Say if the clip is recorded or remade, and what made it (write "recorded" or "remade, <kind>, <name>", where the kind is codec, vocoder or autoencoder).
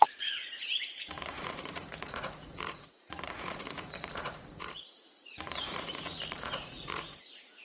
remade, vocoder, Vocos